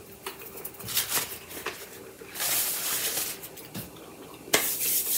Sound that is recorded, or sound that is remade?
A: remade